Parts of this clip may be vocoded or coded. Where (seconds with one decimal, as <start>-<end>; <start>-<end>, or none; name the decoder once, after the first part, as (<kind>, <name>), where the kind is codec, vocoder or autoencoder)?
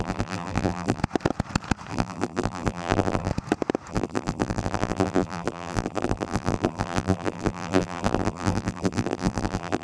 0.0-1.0 (vocoder, BigVGAN v2); 1.9-3.3; 3.9-9.8